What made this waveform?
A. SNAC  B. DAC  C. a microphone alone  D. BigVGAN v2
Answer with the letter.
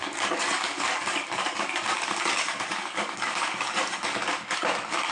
B